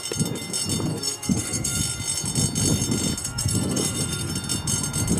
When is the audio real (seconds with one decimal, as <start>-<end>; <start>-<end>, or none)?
0.0-0.9; 1.8-3.2; 4.3-5.2

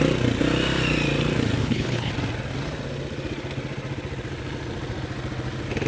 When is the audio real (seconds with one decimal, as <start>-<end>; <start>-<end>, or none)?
0.0-1.6; 2.1-5.9

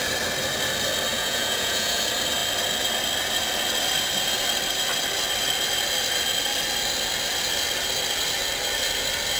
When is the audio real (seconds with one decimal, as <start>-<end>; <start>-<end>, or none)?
0.0-1.1; 2.0-9.4

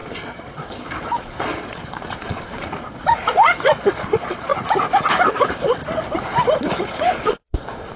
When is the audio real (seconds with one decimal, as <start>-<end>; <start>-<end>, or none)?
4.5-5.3; 5.8-6.7

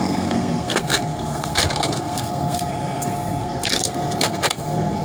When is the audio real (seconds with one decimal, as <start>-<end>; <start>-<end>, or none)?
none